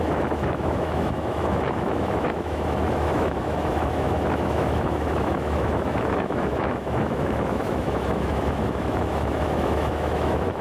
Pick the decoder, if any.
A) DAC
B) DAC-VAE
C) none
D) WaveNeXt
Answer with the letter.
B